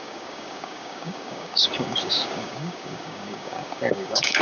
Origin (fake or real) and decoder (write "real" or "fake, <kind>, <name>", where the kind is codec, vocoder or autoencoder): fake, codec, DAC